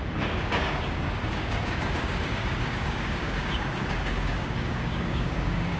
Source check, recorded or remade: remade